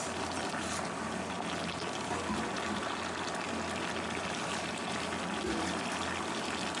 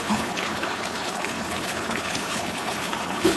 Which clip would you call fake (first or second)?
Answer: second